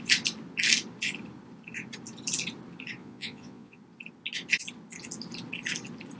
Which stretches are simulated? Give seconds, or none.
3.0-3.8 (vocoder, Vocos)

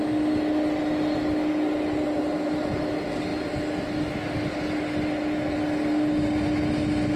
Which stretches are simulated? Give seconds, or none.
none

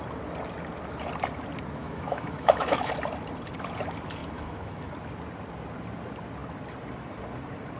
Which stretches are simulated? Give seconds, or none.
1.8-2.9 (autoencoder, DAC-VAE); 4.2-4.9

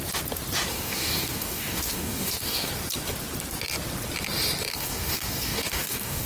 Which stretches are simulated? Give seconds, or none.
0.7-2.7 (codec, DAC); 4.7-6.3

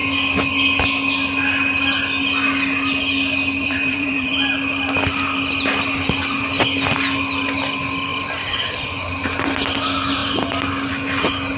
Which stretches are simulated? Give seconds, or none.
3.6-4.3 (vocoder, BigVGAN v2); 8.1-9.4

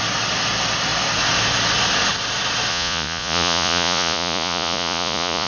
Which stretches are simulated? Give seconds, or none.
2.7-5.5 (vocoder, Vocos)